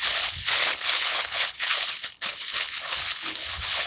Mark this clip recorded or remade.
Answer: remade